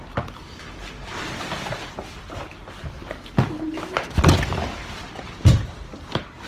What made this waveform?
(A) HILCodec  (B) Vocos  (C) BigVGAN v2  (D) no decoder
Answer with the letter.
D